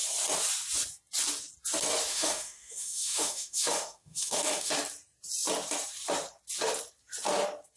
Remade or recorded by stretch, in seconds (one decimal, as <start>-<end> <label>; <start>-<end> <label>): 0.0-2.1 recorded; 2.1-4.7 remade; 4.7-7.8 recorded